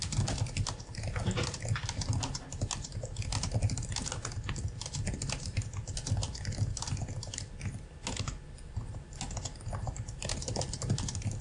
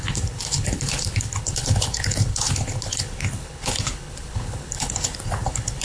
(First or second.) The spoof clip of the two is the second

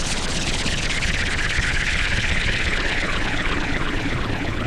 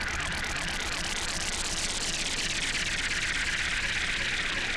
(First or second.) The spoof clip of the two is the first